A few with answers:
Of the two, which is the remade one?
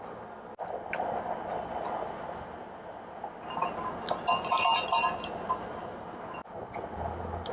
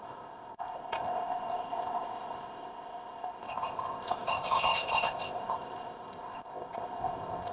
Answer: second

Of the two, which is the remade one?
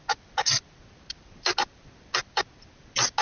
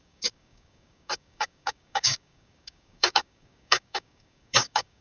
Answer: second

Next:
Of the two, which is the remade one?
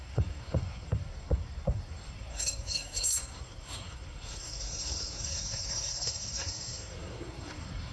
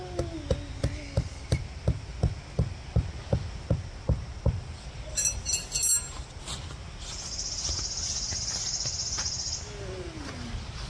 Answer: first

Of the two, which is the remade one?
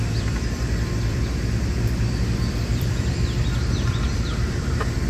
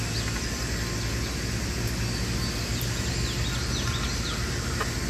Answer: first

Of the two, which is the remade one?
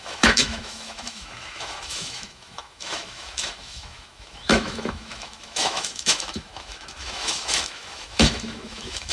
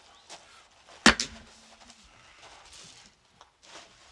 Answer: first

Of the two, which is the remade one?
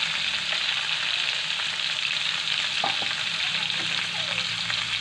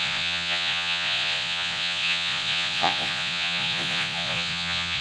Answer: second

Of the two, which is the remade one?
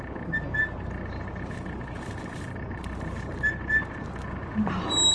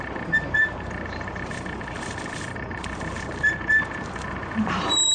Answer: second